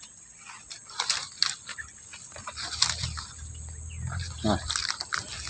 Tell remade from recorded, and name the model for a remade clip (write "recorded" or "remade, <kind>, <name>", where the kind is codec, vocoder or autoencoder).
recorded